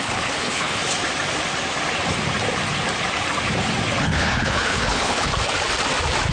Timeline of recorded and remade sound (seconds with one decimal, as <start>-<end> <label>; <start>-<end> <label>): 0.0-0.8 remade; 0.8-4.0 recorded; 4.0-5.3 remade; 5.3-6.3 recorded